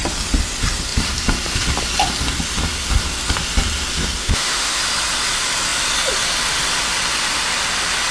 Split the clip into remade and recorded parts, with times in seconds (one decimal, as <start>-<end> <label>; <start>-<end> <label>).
0.0-4.2 recorded; 4.2-4.8 remade; 4.8-8.1 recorded